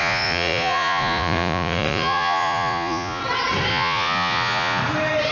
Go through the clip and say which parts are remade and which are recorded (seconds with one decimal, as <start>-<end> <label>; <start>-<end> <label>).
0.0-3.2 remade; 3.2-3.7 recorded; 3.7-4.8 remade; 4.8-5.3 recorded